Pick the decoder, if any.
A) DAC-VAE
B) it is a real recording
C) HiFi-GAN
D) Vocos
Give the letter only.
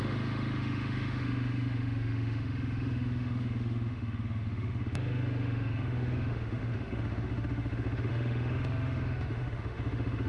A